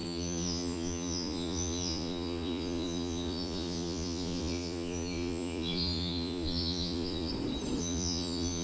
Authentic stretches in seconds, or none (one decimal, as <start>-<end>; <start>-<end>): 7.3-7.8